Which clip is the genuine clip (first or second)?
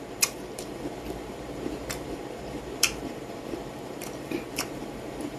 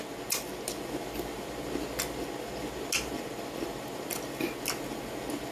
second